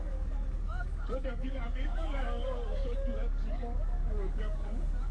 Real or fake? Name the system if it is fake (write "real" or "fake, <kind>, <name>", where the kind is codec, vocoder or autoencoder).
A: fake, codec, DAC